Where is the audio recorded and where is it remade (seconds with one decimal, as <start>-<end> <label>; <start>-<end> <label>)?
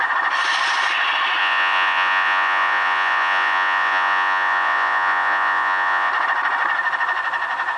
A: 0.0-1.4 recorded; 1.4-6.1 remade; 6.1-7.8 recorded